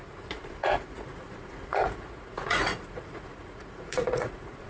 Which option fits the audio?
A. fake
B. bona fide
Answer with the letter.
A